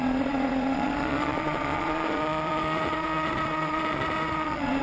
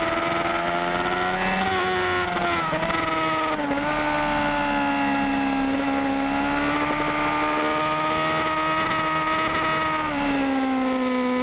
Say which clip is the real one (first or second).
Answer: second